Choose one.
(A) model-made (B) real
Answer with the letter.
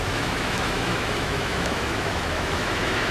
A